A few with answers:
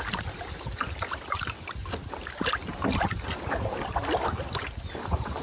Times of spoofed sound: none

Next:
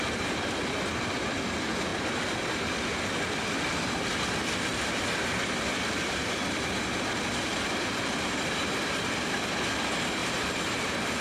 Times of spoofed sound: 10.2-11.2 (vocoder, BigVGAN v2)

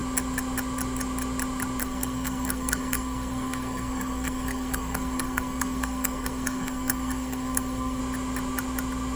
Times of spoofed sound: 1.8-8.0 (codec, SNAC)

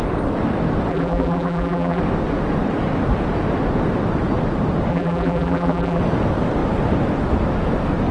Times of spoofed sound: 0.9-2.0 (vocoder, BigVGAN v2); 4.9-6.0